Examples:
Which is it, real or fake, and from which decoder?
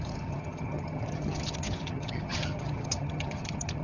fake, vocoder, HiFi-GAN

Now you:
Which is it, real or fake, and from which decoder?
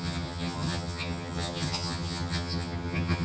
fake, vocoder, HiFi-GAN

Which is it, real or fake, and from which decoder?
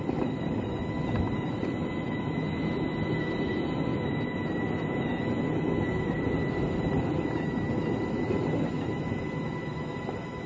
real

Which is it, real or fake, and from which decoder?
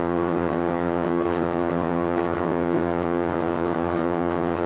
fake, vocoder, HiFi-GAN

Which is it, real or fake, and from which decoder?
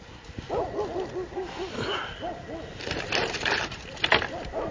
real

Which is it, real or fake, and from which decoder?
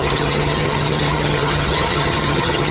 fake, vocoder, HiFi-GAN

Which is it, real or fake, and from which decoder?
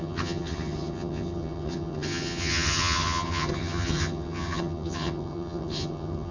fake, vocoder, HiFi-GAN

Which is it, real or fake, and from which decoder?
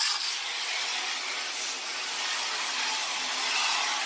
real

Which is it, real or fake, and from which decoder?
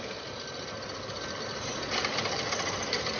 real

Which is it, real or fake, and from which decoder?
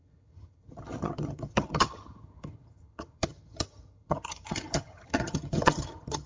fake, vocoder, HiFi-GAN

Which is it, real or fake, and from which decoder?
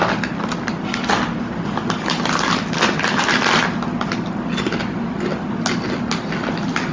real